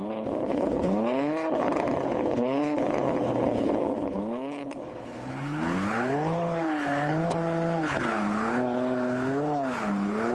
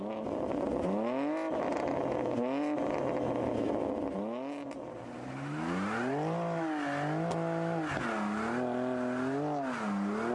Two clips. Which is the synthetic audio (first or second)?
first